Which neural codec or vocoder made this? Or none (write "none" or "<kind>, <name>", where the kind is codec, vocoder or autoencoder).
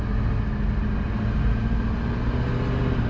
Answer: none